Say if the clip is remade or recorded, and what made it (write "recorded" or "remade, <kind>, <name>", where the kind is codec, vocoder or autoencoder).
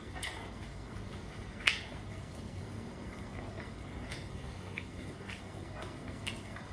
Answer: remade, codec, SNAC